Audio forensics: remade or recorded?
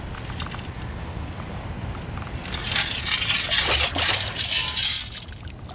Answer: recorded